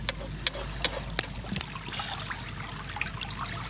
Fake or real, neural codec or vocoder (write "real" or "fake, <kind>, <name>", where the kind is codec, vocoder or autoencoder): real